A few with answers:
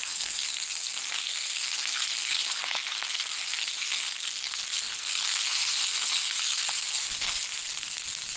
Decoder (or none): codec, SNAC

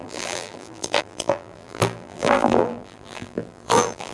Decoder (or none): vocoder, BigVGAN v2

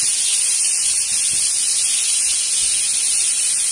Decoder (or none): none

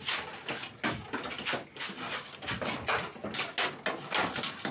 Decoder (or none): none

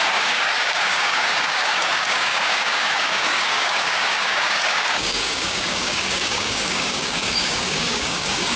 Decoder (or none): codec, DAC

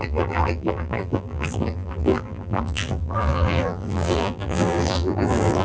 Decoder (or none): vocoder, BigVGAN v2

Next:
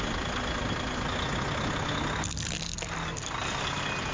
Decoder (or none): none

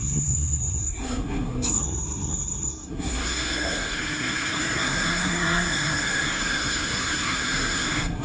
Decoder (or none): codec, SNAC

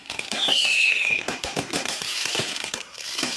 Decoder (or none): codec, SNAC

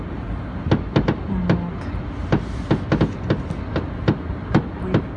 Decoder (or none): none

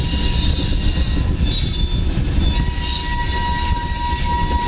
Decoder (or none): none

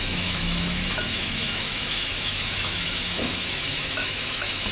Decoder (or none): autoencoder, DAC-VAE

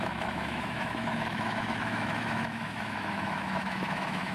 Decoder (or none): autoencoder, DAC-VAE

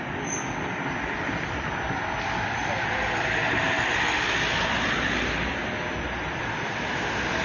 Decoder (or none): none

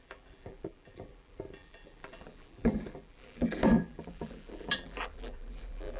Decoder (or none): vocoder, BigVGAN v2